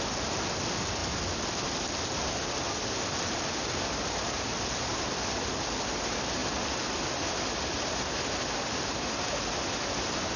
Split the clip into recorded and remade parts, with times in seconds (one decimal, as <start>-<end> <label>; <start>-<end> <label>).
0.0-10.4 recorded